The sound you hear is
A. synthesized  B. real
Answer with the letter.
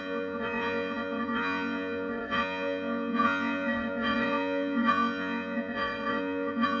A